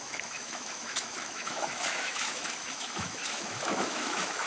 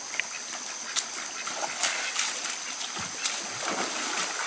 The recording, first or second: second